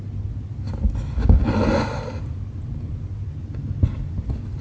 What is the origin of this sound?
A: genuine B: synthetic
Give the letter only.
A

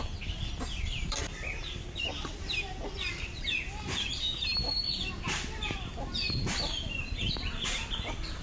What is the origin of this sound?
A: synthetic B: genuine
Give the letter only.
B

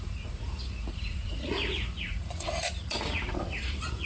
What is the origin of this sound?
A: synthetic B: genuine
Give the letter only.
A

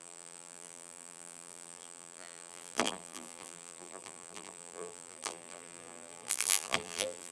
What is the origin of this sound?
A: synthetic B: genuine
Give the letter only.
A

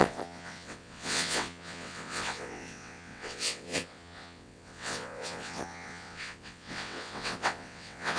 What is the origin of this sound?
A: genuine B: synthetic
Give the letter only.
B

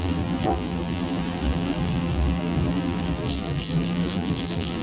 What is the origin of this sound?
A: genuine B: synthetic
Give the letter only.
B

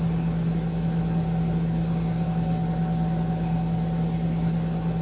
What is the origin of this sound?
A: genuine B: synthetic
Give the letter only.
A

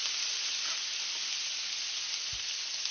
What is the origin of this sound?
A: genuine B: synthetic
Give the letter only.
A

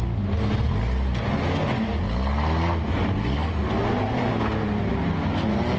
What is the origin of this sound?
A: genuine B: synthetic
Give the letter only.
A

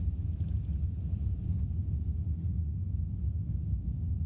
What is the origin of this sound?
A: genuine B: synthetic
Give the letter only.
A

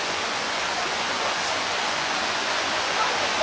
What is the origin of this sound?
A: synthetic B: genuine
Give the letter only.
A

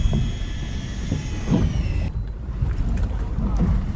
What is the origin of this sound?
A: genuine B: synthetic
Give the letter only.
A